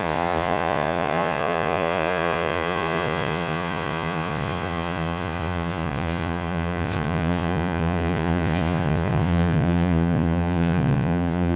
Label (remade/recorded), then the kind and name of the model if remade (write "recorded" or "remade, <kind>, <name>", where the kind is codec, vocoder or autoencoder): remade, vocoder, Vocos